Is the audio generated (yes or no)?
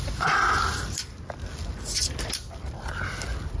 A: no